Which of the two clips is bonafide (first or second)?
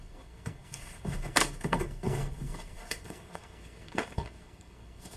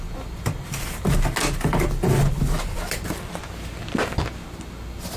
second